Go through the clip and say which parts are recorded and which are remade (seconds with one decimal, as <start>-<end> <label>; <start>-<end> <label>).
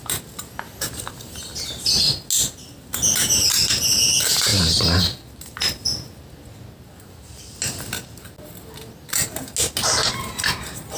0.0-11.0 recorded